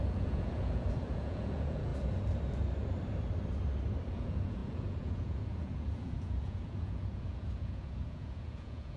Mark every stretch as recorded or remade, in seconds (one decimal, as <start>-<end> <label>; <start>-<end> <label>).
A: 0.0-1.9 remade; 1.9-4.1 recorded; 4.1-9.0 remade